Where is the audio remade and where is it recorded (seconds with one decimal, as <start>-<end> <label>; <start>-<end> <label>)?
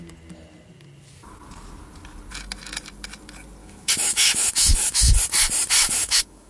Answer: 0.0-3.6 recorded; 3.6-5.2 remade; 5.2-5.8 recorded; 5.8-6.5 remade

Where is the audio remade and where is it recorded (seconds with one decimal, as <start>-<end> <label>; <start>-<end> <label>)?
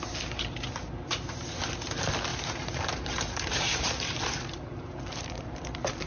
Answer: 0.0-2.3 recorded; 2.3-6.1 remade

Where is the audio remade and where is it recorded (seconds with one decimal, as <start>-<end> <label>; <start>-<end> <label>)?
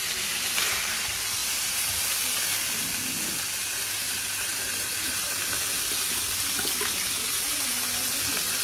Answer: 0.0-1.4 recorded; 1.4-1.9 remade; 1.9-3.6 recorded; 3.6-5.3 remade; 5.3-8.6 recorded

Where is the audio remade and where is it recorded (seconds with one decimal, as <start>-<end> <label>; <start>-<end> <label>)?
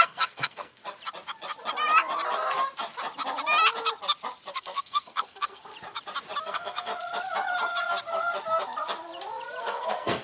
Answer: 0.0-0.8 remade; 0.8-4.5 recorded; 4.5-5.7 remade; 5.7-6.4 recorded; 6.4-6.9 remade; 6.9-9.6 recorded; 9.6-10.2 remade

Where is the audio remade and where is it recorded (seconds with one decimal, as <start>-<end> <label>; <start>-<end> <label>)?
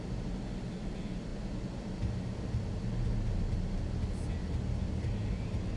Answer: 0.0-5.8 recorded